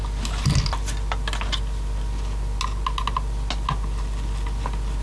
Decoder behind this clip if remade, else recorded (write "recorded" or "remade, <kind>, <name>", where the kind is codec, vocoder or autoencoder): recorded